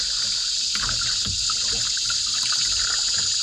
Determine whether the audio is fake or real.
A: real